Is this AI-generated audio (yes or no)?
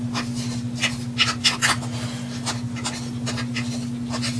no